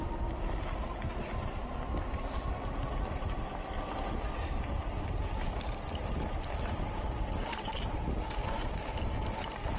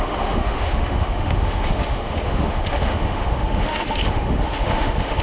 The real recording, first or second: first